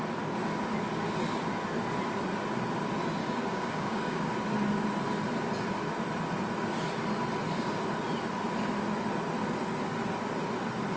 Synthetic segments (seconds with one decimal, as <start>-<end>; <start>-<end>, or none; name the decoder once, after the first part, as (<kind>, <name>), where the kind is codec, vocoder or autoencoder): 3.2-4.3 (codec, DAC)